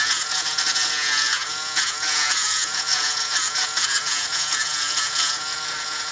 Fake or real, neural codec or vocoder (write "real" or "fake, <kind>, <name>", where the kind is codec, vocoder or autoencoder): fake, vocoder, Vocos